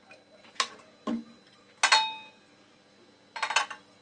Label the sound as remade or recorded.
recorded